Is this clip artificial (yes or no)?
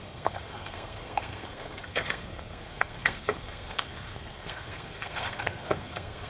yes